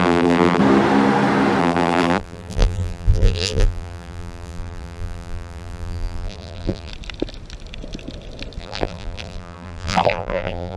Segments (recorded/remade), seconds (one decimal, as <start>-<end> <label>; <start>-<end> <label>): 0.0-0.6 remade; 0.6-1.6 recorded; 1.6-6.9 remade; 6.9-8.6 recorded; 8.6-10.8 remade